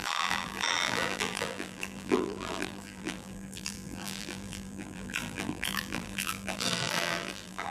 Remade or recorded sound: remade